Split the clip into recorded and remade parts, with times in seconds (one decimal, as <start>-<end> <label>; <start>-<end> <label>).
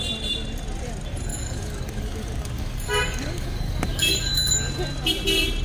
0.0-1.3 recorded; 1.3-4.7 remade; 4.7-5.6 recorded